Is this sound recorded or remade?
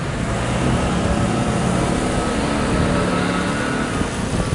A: recorded